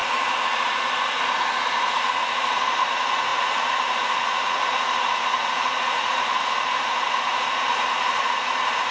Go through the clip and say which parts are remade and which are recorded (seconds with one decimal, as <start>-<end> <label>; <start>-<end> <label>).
0.0-8.9 remade